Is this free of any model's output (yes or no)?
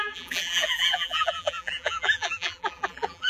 no